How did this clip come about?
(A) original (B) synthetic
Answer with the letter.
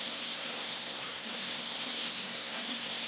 B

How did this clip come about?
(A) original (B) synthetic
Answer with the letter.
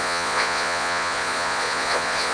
B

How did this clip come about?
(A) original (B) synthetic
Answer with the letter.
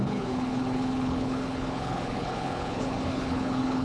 B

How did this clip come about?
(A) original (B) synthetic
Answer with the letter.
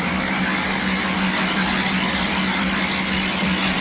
A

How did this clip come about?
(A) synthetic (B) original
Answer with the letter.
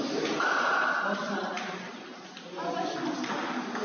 B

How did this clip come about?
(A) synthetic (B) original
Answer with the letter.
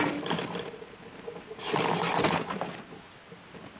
B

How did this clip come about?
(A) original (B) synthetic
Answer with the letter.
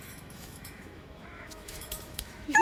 B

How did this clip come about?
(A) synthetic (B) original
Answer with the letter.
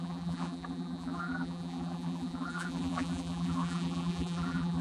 A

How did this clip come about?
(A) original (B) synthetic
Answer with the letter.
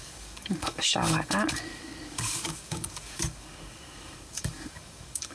B